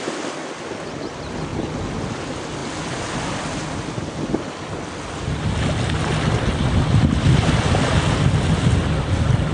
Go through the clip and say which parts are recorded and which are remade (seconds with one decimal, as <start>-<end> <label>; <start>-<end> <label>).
0.0-9.5 recorded